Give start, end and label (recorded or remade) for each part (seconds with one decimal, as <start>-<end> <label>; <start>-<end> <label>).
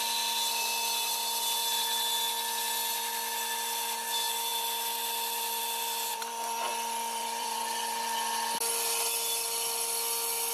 0.0-4.5 recorded; 4.5-5.6 remade; 5.6-6.1 recorded; 6.1-7.8 remade; 7.8-10.5 recorded